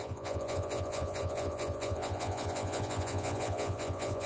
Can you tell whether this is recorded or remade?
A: remade